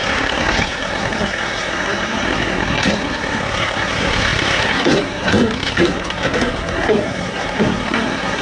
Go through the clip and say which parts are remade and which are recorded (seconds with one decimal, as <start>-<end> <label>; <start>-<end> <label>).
0.0-8.4 remade